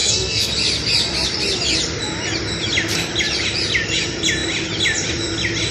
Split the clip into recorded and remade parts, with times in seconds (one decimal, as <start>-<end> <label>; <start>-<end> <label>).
0.0-0.5 remade; 0.5-5.7 recorded